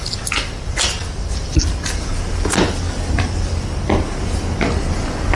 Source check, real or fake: real